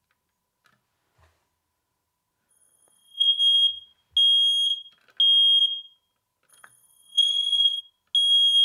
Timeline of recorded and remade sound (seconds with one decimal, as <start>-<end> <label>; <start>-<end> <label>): 0.0-2.5 recorded; 2.5-3.4 remade; 3.4-6.5 recorded; 6.5-7.8 remade; 7.8-8.6 recorded